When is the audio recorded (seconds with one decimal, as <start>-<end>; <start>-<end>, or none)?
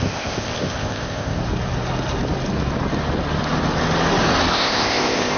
1.4-4.5